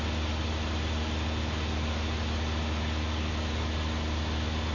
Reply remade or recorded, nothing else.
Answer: recorded